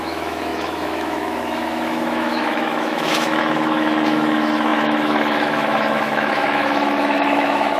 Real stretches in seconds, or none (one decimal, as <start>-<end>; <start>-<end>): none

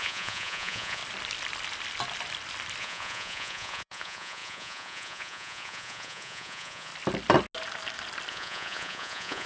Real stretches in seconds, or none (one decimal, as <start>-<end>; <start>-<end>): 1.0-2.8; 6.9-8.3

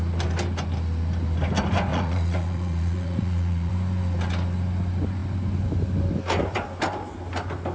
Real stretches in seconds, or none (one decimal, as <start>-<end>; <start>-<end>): 0.0-1.9; 3.7-7.7

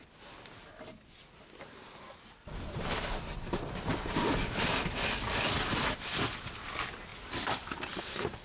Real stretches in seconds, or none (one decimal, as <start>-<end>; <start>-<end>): 0.0-7.1

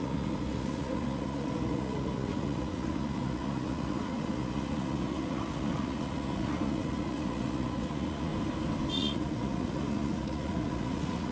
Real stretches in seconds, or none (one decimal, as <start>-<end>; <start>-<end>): 8.3-8.9